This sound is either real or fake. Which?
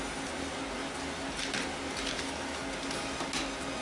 real